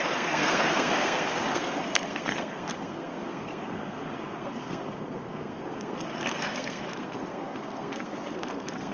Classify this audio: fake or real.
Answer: fake